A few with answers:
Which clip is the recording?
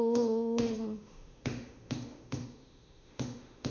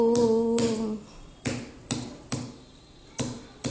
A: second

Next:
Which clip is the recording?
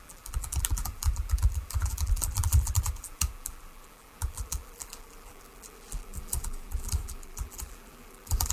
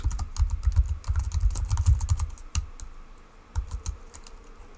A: second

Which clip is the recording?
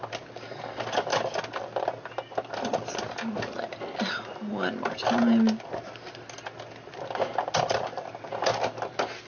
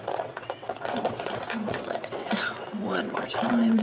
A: first